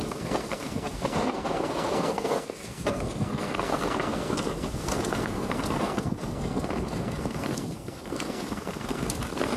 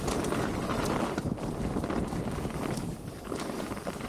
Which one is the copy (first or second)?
first